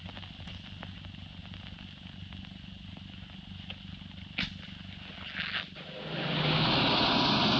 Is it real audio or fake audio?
real